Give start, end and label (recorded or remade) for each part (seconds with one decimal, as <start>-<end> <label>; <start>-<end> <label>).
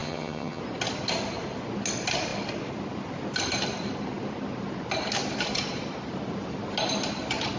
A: 0.0-0.6 remade; 0.6-7.6 recorded